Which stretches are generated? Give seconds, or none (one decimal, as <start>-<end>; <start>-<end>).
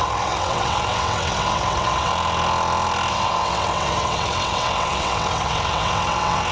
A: 0.0-2.1; 3.1-6.5